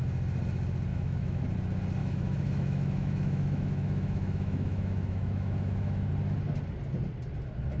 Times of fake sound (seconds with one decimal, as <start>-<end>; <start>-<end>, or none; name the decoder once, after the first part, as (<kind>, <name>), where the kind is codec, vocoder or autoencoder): 0.9-1.4 (autoencoder, DAC-VAE); 2.0-6.1